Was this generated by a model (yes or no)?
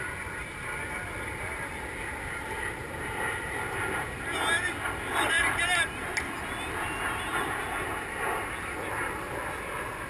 no